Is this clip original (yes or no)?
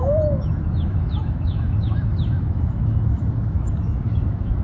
no